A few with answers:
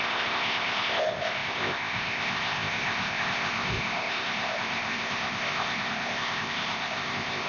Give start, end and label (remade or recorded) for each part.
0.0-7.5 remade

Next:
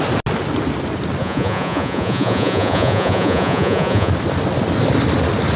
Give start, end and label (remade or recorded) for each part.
0.0-1.2 recorded; 1.2-4.1 remade; 4.1-5.6 recorded